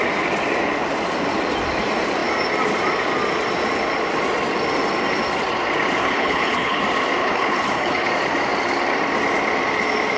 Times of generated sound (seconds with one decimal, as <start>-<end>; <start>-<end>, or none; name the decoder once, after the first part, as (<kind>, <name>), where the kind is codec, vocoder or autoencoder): 6.0-6.8 (codec, HILCodec); 7.2-8.1